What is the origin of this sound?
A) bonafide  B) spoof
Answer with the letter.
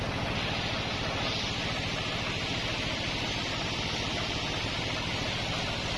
A